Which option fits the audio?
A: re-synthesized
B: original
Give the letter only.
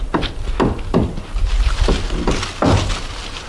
B